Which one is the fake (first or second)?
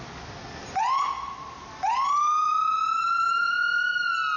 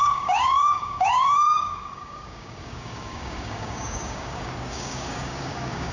second